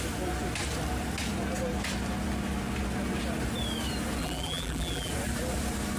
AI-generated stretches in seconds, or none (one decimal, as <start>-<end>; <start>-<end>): 4.2-5.1